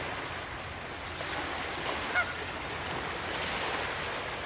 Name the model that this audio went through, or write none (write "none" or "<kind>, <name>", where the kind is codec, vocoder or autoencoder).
none